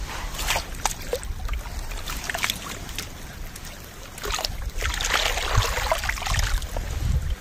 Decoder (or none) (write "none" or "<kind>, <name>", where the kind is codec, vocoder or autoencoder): none